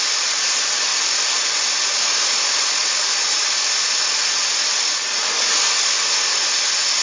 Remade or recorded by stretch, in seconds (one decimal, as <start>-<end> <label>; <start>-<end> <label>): 0.0-4.2 recorded; 4.2-5.5 remade; 5.5-7.0 recorded